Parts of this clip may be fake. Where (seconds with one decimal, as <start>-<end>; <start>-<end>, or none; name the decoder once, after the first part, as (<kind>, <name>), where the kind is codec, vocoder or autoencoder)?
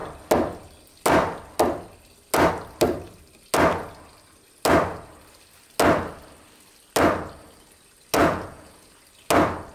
8.2-8.9 (vocoder, Vocos)